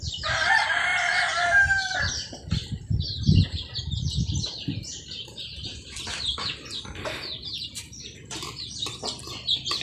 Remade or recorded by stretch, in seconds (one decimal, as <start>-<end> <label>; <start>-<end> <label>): 0.0-4.9 remade; 4.9-8.4 recorded; 8.4-9.8 remade